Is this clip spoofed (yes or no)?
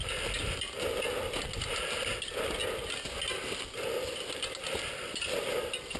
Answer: no